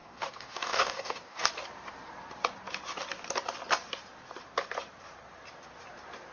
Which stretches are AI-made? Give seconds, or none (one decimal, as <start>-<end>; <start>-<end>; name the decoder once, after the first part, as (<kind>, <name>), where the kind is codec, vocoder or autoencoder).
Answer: 0.0-1.5 (codec, DAC)